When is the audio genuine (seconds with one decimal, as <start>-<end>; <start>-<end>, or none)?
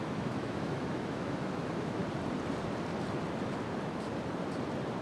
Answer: 2.0-5.0